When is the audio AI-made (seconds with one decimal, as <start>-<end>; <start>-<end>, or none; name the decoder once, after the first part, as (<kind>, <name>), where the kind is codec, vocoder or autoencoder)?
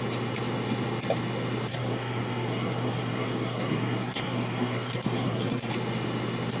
1.7-5.7 (codec, SNAC)